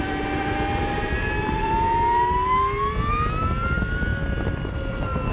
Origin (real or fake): real